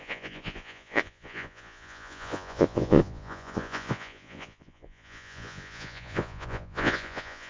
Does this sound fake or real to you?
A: fake